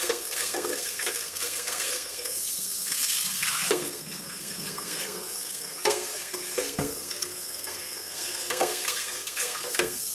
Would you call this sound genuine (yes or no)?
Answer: no